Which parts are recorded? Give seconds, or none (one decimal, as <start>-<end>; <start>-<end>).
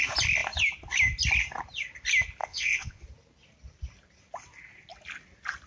0.0-2.4; 3.0-5.7